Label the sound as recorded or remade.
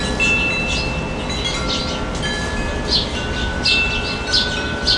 recorded